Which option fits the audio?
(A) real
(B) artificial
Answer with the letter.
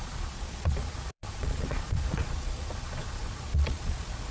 B